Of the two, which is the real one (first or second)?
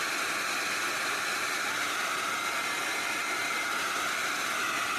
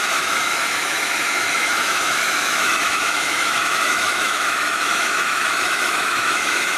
first